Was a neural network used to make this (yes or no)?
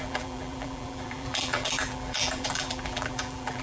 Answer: yes